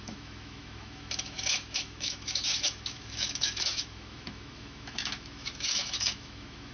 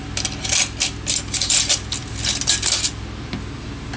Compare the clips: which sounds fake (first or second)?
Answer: first